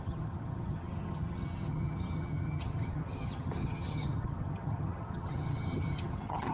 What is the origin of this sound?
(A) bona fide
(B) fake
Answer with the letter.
B